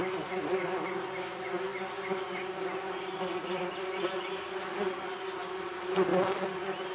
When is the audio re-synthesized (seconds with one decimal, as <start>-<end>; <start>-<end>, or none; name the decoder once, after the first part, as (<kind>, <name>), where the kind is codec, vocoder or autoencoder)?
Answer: none